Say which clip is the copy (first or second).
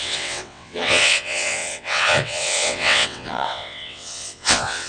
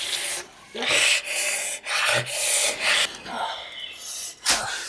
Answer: first